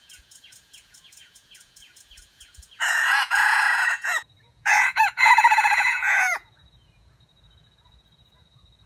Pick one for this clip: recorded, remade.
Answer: remade